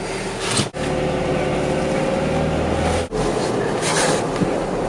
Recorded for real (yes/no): yes